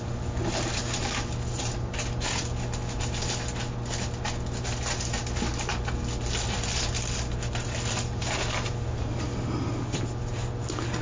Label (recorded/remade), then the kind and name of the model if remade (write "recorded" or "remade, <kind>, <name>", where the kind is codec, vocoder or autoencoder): recorded